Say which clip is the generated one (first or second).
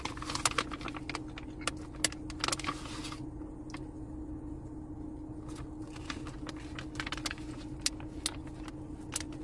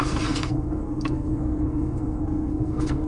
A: second